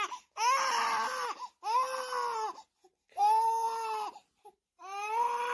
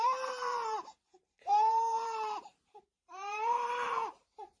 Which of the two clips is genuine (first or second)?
first